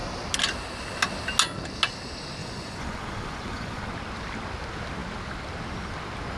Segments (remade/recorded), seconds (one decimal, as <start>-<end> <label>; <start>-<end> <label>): 0.0-2.4 recorded; 2.4-3.8 remade; 3.8-6.4 recorded